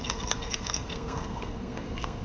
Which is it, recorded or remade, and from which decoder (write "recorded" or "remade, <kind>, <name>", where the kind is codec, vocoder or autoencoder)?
remade, codec, SNAC